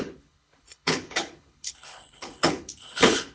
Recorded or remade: remade